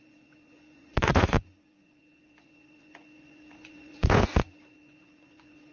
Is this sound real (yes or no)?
no